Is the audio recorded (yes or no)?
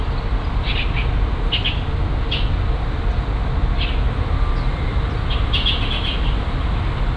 yes